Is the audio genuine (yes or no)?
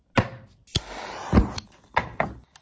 yes